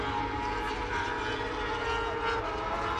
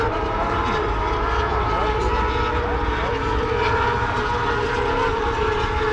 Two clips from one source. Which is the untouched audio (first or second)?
first